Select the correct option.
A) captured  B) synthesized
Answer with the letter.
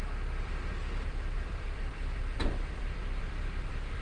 B